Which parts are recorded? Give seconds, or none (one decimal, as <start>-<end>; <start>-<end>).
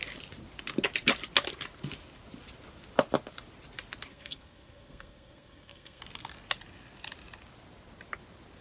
0.0-4.1; 6.0-8.6